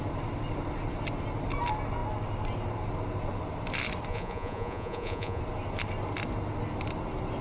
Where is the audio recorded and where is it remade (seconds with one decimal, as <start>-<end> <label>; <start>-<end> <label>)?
0.0-4.1 recorded; 4.1-5.4 remade; 5.4-7.4 recorded